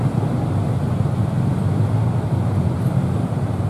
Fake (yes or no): no